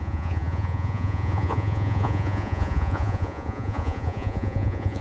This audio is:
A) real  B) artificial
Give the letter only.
B